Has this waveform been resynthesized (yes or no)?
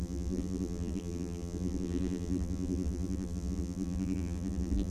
yes